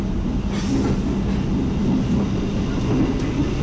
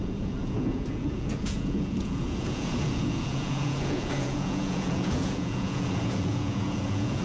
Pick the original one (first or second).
first